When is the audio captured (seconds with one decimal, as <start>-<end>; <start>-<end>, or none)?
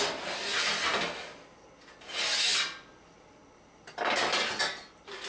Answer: 0.0-5.3